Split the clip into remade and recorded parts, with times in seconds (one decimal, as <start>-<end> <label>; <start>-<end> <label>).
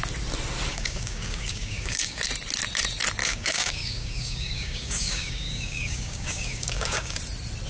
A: 0.0-0.7 recorded; 0.7-2.2 remade; 2.2-3.2 recorded; 3.2-7.2 remade; 7.2-7.7 recorded